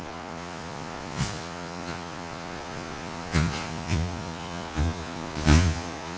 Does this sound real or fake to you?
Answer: fake